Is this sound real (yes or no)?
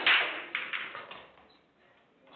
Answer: yes